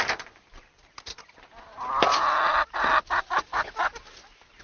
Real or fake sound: real